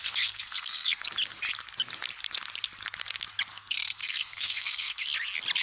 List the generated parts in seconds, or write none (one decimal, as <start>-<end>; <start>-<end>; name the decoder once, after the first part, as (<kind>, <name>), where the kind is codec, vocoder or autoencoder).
0.0-1.0 (codec, SNAC); 3.5-5.0